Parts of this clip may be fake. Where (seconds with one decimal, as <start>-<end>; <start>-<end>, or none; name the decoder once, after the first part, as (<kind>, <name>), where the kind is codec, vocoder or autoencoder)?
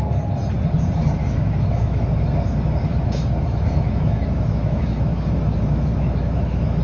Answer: 1.2-2.1 (autoencoder, DAC-VAE); 2.9-6.8